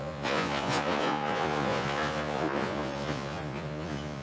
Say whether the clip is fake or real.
fake